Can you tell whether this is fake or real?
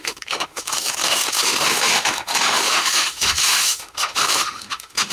fake